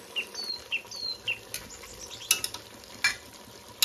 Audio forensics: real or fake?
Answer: real